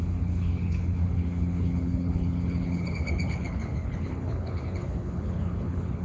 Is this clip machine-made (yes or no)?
yes